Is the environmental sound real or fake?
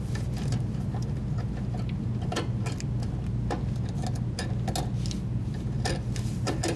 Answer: real